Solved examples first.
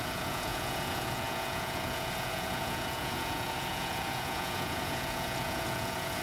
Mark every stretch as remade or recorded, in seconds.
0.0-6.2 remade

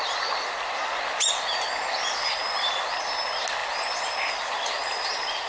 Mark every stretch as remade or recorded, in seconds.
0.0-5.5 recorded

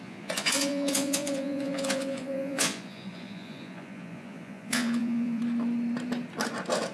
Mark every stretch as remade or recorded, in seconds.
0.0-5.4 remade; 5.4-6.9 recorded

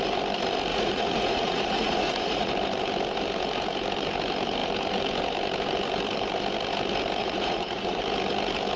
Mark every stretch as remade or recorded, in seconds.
0.0-0.7 recorded; 0.7-2.5 remade; 2.5-7.2 recorded; 7.2-8.0 remade; 8.0-8.8 recorded

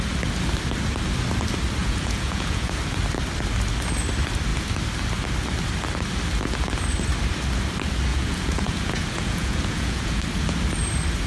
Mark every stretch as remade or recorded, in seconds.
0.0-1.8 recorded; 1.8-2.8 remade; 2.8-8.1 recorded; 8.1-10.2 remade; 10.2-11.3 recorded